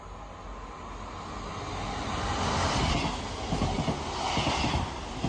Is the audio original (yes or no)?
yes